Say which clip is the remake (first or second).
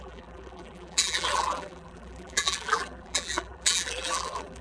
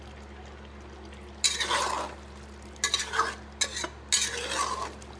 first